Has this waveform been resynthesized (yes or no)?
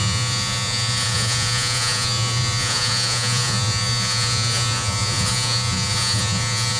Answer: yes